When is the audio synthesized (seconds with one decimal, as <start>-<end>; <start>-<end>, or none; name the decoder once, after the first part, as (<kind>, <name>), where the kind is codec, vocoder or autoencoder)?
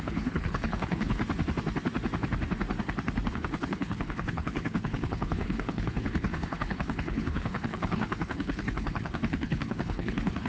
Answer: 0.0-1.2 (codec, HILCodec); 3.3-10.5